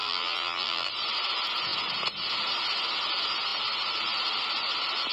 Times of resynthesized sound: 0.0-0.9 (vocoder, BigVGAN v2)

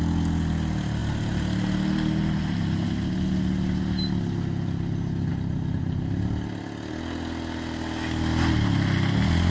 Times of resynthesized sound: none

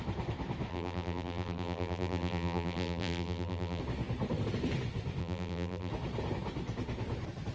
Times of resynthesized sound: 0.7-3.8 (vocoder, BigVGAN v2); 5.2-5.9

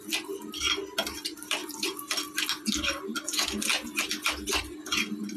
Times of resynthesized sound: 1.6-2.3 (vocoder, BigVGAN v2)

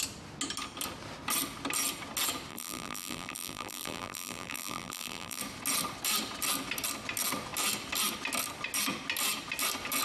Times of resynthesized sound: 2.5-5.4 (vocoder, BigVGAN v2)

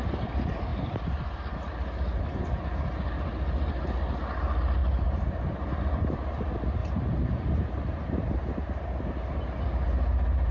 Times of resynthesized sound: 4.8-5.7 (vocoder, BigVGAN v2); 6.8-9.6

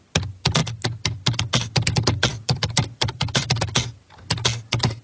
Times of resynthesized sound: 2.3-4.3 (vocoder, BigVGAN v2)

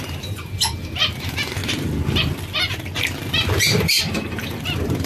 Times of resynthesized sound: 0.0-1.6 (vocoder, BigVGAN v2); 4.0-5.1